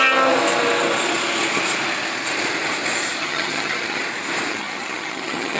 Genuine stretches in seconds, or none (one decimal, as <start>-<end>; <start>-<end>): 0.0-3.2; 4.0-4.5

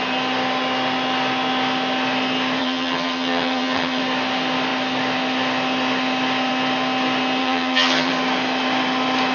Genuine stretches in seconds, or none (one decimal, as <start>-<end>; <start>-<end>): 0.0-2.6; 4.0-7.4; 8.1-9.3

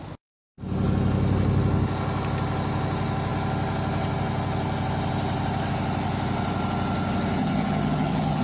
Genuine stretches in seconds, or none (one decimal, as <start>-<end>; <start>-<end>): 0.0-7.4

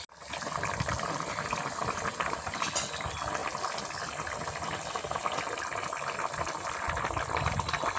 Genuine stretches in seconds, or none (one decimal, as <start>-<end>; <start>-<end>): 0.0-8.0